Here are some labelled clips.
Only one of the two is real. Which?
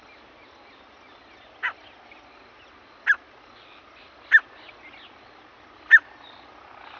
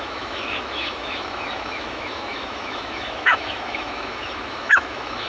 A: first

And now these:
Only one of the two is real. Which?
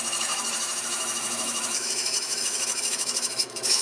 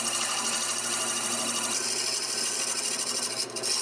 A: second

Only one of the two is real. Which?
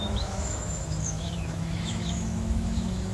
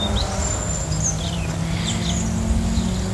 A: second